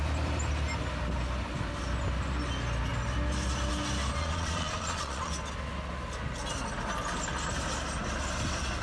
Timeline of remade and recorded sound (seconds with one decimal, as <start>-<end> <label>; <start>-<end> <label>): 0.0-4.2 recorded; 4.2-5.3 remade; 5.3-8.8 recorded